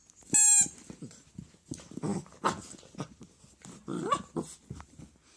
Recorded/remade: recorded